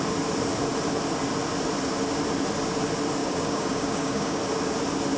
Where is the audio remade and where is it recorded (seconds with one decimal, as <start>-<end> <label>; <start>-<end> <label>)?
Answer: 0.0-3.2 recorded; 3.2-4.4 remade; 4.4-5.2 recorded

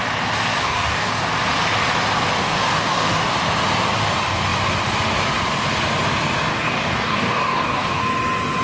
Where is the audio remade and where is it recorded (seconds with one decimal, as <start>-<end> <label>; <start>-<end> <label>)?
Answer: 0.0-0.6 recorded; 0.6-1.1 remade; 1.1-2.4 recorded; 2.4-3.3 remade; 3.3-6.5 recorded; 6.5-8.0 remade; 8.0-8.6 recorded

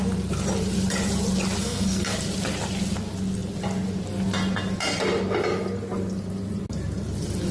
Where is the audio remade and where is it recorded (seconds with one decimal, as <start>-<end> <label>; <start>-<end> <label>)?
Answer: 0.0-1.6 recorded; 1.6-2.2 remade; 2.2-7.5 recorded

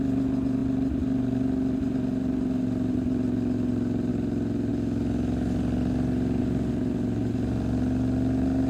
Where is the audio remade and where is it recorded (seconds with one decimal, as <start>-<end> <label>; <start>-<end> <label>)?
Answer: 0.0-8.7 recorded